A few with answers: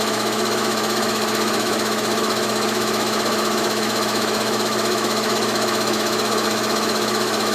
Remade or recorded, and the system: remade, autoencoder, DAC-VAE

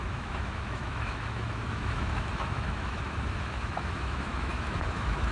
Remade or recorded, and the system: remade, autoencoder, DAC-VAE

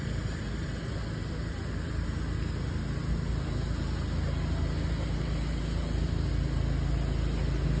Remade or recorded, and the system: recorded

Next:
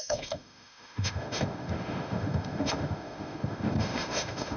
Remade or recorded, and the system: remade, autoencoder, DAC-VAE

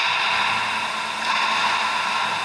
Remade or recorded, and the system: recorded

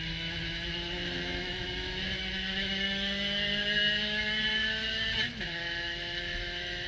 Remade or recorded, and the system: remade, autoencoder, DAC-VAE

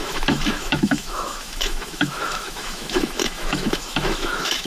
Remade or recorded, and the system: remade, autoencoder, DAC-VAE